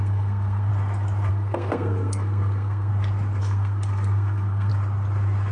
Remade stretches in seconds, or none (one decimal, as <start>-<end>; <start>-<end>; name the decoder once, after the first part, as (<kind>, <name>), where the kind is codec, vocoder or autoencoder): 0.0-0.7 (codec, SNAC); 1.3-2.9; 3.4-4.7